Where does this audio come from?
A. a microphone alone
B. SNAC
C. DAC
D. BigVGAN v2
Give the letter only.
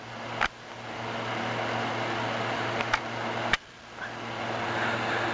A